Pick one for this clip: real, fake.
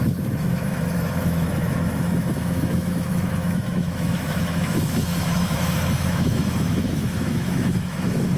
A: fake